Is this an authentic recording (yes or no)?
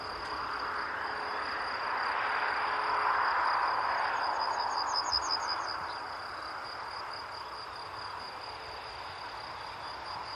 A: yes